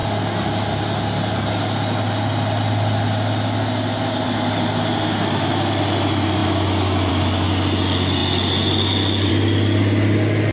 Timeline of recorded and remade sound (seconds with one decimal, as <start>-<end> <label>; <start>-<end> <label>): 0.0-10.5 recorded